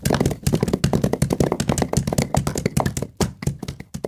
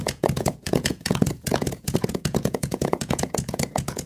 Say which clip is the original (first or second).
first